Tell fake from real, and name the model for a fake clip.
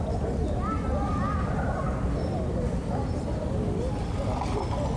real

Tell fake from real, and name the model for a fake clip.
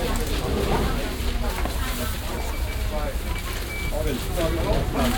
real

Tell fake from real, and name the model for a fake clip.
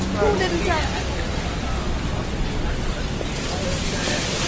real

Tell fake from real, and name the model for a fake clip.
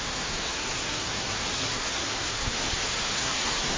fake, codec, SNAC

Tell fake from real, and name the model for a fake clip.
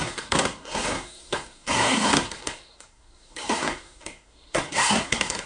fake, codec, SNAC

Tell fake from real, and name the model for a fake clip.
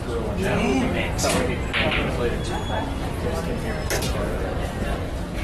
real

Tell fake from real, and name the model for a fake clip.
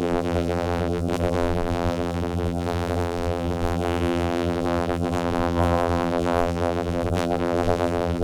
fake, vocoder, BigVGAN v2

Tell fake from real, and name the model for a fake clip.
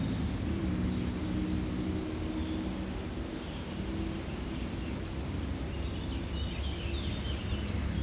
real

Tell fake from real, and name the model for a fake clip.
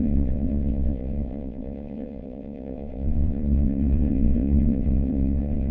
fake, vocoder, WaveNeXt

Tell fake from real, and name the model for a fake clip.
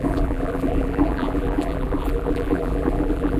fake, vocoder, BigVGAN v2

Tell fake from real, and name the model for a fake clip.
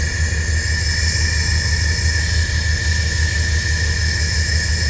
real